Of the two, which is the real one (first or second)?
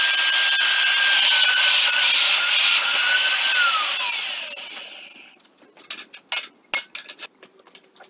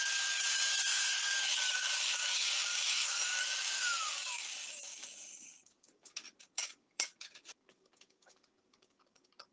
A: first